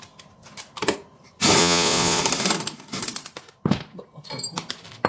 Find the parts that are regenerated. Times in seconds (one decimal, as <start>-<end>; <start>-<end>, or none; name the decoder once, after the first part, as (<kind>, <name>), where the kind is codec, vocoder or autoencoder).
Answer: 1.6-2.2 (vocoder, Vocos)